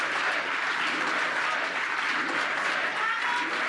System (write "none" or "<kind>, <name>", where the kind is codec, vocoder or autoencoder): none